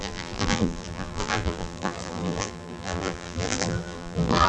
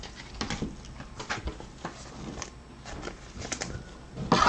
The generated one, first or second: first